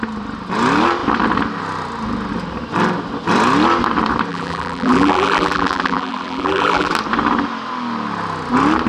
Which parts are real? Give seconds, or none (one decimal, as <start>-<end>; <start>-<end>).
0.0-4.3; 6.9-8.9